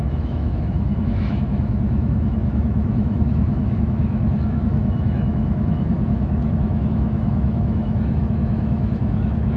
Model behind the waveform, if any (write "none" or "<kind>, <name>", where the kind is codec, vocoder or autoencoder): autoencoder, DAC-VAE